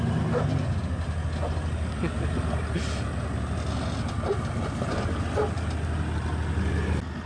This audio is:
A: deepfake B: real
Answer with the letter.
B